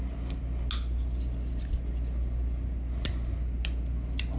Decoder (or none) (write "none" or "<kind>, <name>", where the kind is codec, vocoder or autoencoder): none